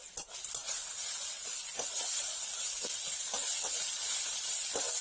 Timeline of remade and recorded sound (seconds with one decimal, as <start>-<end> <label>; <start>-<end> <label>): 0.0-5.0 recorded